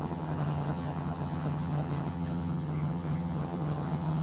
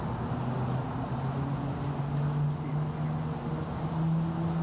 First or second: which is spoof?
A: first